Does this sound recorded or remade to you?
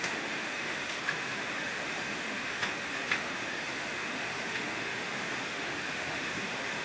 remade